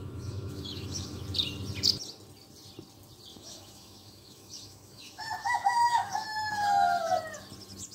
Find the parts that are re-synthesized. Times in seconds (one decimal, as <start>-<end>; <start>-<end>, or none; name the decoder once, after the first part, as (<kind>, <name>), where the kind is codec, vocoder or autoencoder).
0.0-1.2 (autoencoder, DAC-VAE); 3.3-7.1